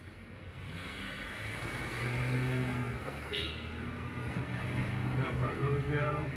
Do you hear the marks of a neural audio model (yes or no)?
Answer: yes